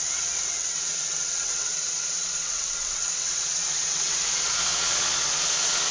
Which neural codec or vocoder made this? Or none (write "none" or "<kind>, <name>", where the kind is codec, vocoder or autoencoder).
vocoder, WaveNeXt